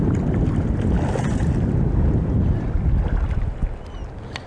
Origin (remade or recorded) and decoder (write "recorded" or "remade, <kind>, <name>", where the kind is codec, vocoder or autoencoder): recorded